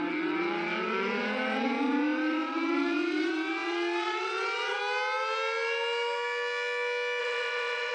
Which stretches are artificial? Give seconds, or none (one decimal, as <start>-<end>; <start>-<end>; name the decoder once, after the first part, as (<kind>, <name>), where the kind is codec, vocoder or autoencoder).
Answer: 0.0-4.8 (vocoder, WaveNeXt); 7.2-7.9